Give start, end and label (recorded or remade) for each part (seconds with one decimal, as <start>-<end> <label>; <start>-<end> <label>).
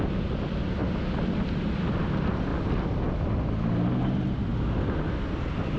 0.0-5.8 recorded